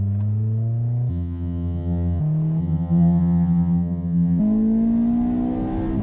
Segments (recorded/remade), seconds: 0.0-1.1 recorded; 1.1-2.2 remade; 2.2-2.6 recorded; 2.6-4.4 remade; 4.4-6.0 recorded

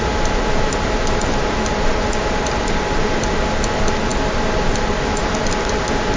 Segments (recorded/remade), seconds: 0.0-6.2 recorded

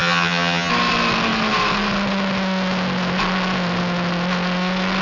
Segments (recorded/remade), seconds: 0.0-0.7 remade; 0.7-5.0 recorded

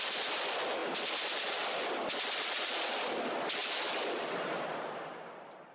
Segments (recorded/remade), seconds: 0.0-5.7 recorded